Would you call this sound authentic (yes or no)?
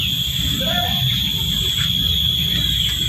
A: yes